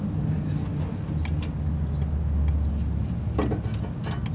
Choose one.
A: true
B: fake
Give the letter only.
A